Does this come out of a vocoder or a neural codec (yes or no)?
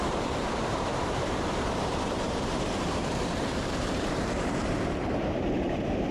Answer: yes